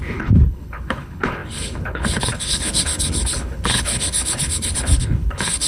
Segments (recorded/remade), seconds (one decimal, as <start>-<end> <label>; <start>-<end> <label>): 0.0-5.7 remade